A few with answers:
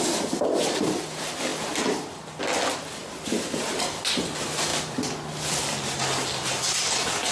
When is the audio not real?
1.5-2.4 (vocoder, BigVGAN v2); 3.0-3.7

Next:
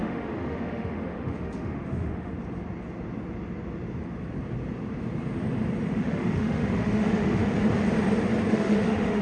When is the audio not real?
0.0-2.3 (autoencoder, DAC-VAE); 5.9-7.4; 8.5-9.2

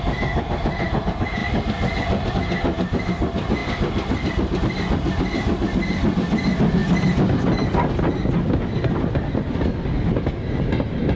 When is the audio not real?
none

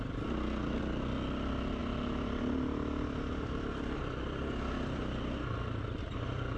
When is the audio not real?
none

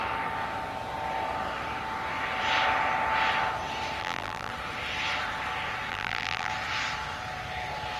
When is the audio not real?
4.0-4.5 (vocoder, BigVGAN v2); 5.9-6.5

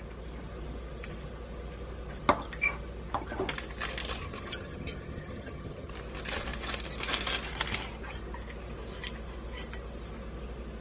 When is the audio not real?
4.2-5.9 (vocoder, HiFi-GAN)